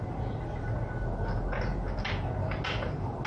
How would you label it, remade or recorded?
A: recorded